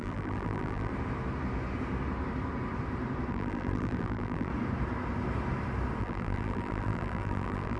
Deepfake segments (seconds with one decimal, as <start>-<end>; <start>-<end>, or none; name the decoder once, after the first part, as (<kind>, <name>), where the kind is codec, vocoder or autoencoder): 0.0-0.9 (vocoder, BigVGAN v2); 3.3-4.5; 6.0-7.8